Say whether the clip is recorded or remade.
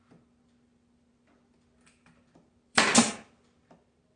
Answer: remade